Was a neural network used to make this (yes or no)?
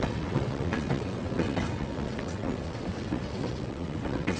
yes